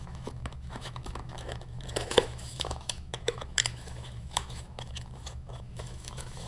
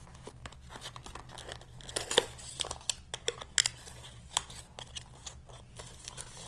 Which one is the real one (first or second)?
second